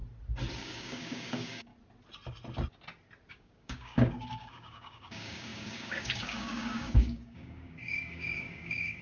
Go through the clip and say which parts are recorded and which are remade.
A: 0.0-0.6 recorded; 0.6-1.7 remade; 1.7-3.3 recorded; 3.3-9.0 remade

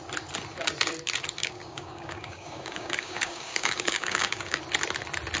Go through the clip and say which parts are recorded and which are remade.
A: 0.0-1.4 recorded; 1.4-4.6 remade; 4.6-5.4 recorded

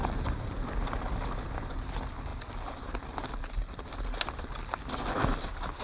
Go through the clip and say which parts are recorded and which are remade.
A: 0.0-5.8 recorded

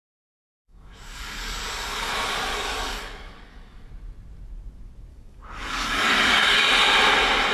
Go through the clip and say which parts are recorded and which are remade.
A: 0.0-0.6 recorded; 0.6-2.1 remade; 2.1-2.5 recorded; 2.5-3.9 remade; 3.9-5.1 recorded; 5.1-6.7 remade; 6.7-7.5 recorded

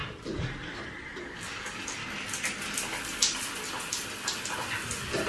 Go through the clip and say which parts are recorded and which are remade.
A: 0.0-1.2 recorded; 1.2-2.0 remade; 2.0-5.3 recorded

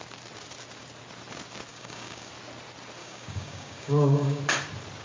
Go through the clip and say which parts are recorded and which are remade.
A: 0.0-1.7 recorded; 1.7-2.3 remade; 2.3-3.0 recorded; 3.0-4.4 remade; 4.4-5.0 recorded